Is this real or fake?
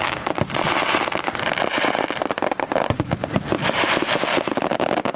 real